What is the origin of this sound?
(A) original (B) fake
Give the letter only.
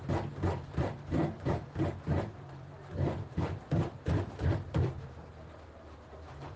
B